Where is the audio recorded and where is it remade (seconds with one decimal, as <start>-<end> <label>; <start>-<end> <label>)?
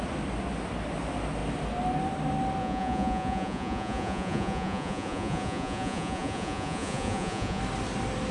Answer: 0.0-2.6 recorded; 2.6-7.6 remade; 7.6-8.3 recorded